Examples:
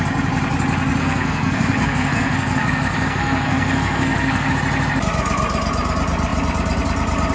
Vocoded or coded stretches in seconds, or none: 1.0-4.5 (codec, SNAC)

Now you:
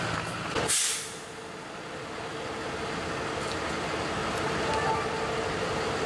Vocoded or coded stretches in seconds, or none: none